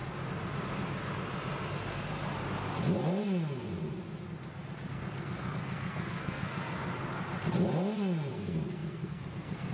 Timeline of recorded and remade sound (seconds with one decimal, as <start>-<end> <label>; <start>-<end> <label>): 0.0-4.9 recorded; 4.9-6.8 remade; 6.8-8.3 recorded; 8.3-9.7 remade